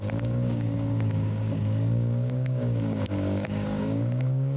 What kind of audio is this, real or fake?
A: fake